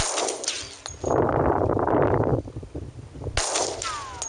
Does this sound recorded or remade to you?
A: recorded